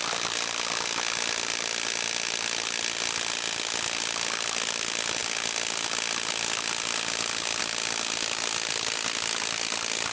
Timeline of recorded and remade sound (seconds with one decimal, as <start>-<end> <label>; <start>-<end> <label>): 0.0-10.1 recorded